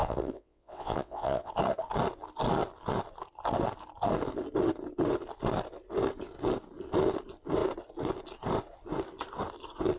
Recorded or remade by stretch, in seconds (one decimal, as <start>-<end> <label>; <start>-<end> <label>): 0.0-1.5 remade; 1.5-10.0 recorded

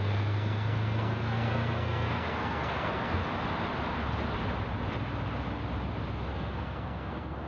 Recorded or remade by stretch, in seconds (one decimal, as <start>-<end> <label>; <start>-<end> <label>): 0.0-3.2 remade; 3.2-6.3 recorded; 6.3-7.5 remade

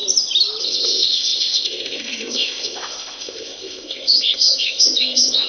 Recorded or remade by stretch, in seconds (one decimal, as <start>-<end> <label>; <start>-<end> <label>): 0.0-0.6 recorded; 0.6-5.5 remade

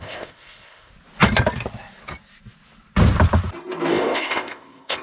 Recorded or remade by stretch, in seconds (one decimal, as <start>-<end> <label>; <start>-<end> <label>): 0.0-0.9 remade; 0.9-3.9 recorded; 3.9-5.0 remade

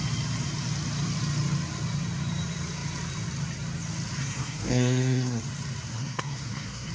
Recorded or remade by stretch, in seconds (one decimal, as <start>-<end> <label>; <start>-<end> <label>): 0.0-4.2 recorded; 4.2-5.4 remade; 5.4-5.9 recorded; 5.9-6.9 remade

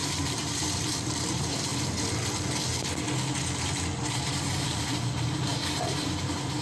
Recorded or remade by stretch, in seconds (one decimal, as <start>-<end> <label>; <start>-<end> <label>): 0.0-1.7 remade; 1.7-4.1 recorded; 4.1-6.6 remade